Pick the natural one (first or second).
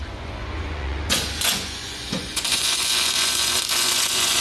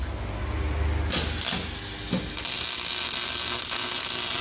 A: second